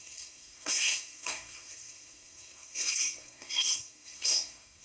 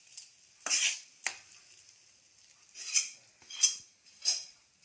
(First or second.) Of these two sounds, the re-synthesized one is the first